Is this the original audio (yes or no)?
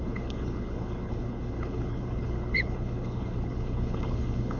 no